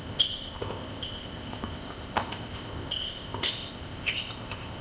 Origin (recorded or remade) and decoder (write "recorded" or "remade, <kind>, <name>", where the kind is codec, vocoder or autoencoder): remade, codec, ZipCodec